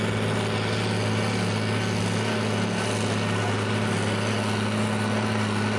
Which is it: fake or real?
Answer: real